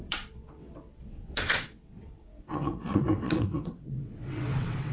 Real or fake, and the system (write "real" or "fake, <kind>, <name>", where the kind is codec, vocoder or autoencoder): fake, vocoder, WaveNeXt